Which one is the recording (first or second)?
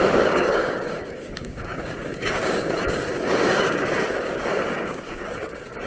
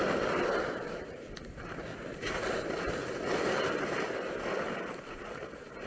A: second